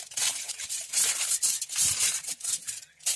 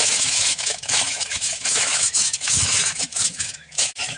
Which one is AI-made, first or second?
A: second